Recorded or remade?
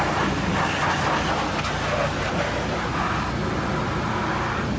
recorded